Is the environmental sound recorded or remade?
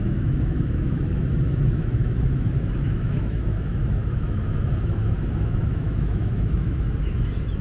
remade